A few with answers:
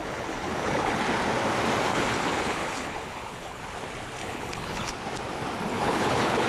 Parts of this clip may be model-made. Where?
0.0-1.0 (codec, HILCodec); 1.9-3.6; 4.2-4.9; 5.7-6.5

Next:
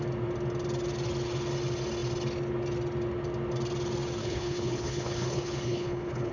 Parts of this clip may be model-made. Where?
4.2-6.3 (codec, HILCodec)

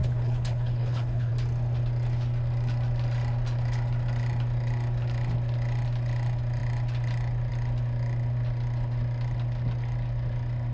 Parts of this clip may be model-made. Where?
0.0-1.3 (codec, HILCodec)

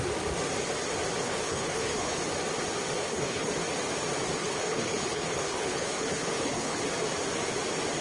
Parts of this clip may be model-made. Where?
1.2-2.2 (codec, HILCodec); 3.0-3.5; 4.4-6.8

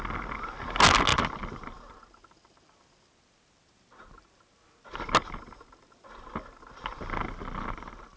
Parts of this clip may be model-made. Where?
none

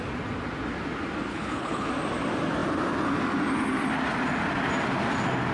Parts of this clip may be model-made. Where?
1.3-1.9 (codec, HILCodec)

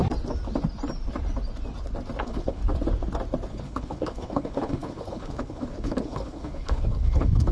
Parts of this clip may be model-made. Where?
2.2-2.6 (codec, HILCodec); 3.5-7.5